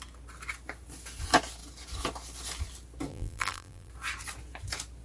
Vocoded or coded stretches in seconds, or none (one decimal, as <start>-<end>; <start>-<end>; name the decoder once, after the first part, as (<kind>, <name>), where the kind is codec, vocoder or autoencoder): 3.1-3.9 (vocoder, BigVGAN v2)